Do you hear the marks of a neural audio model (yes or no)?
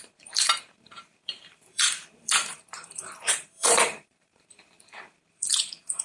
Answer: yes